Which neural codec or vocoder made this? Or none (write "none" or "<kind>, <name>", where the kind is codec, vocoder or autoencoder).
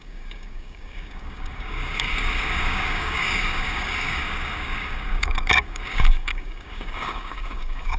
codec, DAC